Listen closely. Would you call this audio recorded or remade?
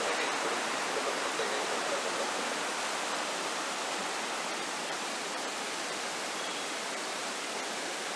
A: remade